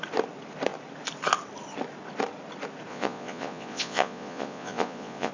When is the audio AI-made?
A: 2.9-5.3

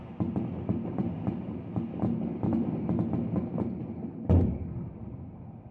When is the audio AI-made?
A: none

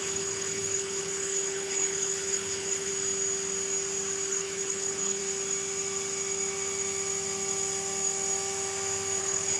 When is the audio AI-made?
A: 0.0-2.9; 4.3-5.2; 9.2-9.6

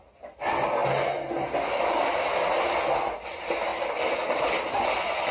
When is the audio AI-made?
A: none

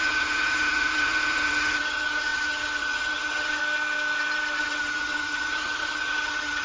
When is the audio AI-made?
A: 0.0-3.6; 4.6-6.6

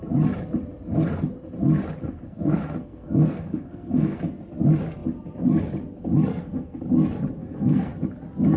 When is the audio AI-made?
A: 2.0-4.2; 6.3-6.8; 7.4-7.9